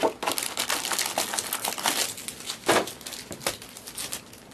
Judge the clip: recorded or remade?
recorded